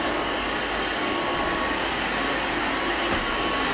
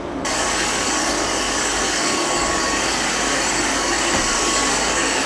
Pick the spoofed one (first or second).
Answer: second